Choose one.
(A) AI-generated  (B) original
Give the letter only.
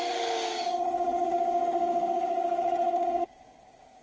A